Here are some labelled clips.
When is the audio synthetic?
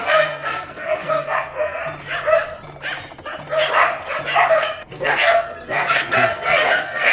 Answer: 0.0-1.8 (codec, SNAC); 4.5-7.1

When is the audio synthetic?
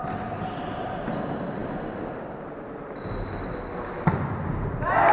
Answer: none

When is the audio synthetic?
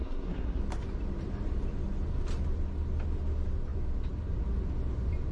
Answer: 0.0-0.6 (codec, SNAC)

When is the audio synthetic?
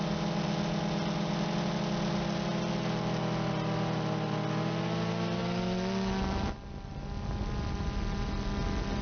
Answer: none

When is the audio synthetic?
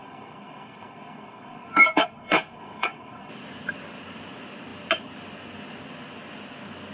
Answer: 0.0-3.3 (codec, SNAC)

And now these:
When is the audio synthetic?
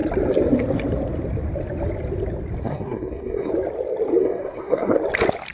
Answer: 2.6-3.5 (codec, SNAC); 4.2-5.0